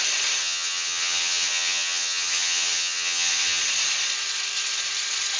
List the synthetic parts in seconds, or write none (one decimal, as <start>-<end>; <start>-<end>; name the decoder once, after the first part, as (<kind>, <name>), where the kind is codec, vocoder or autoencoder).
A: 0.4-3.6 (vocoder, HiFi-GAN)

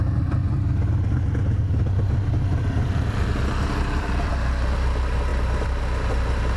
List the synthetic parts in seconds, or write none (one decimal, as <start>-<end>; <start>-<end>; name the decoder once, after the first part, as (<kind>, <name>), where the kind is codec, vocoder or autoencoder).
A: 0.4-4.3 (vocoder, BigVGAN v2); 5.3-5.8

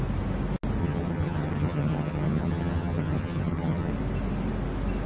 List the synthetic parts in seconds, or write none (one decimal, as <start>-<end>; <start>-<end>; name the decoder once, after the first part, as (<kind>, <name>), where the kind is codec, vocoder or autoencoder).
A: 0.8-3.9 (vocoder, HiFi-GAN)

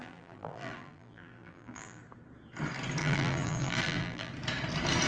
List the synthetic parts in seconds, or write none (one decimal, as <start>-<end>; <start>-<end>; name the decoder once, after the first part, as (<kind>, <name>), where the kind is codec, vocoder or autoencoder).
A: 0.0-2.0 (vocoder, BigVGAN v2); 3.0-4.3

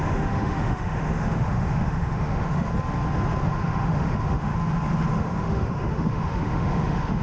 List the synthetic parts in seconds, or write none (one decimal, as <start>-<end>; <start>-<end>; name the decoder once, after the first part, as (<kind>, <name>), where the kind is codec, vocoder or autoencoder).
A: 0.0-2.7 (autoencoder, DAC-VAE); 3.4-4.5; 5.1-7.2